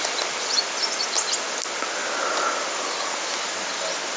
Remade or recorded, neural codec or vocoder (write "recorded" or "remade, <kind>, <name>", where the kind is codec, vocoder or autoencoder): recorded